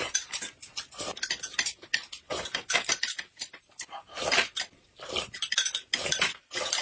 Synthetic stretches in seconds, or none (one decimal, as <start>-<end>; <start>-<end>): none